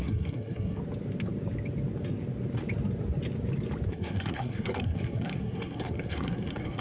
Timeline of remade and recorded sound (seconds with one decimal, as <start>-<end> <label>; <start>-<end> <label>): 0.0-0.8 remade; 0.8-3.9 recorded; 3.9-6.8 remade